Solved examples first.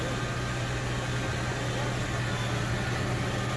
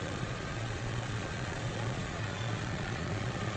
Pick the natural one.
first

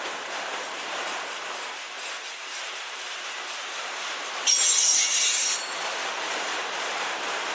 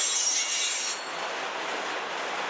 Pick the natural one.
second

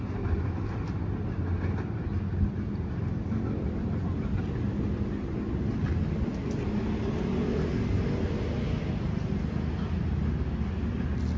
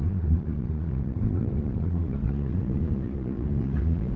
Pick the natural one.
first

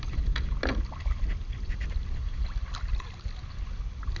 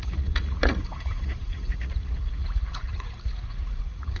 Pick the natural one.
first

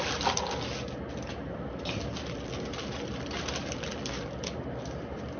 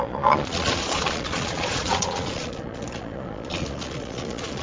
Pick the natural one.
first